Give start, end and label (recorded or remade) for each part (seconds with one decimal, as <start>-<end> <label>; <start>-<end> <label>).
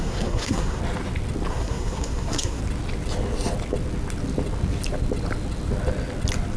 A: 0.0-0.8 remade; 0.8-1.5 recorded; 1.5-2.6 remade; 2.6-6.6 recorded